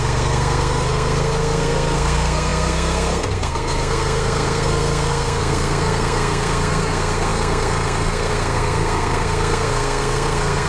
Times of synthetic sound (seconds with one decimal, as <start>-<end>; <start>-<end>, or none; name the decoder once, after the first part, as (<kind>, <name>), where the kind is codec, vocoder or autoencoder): 0.0-10.7 (codec, SNAC)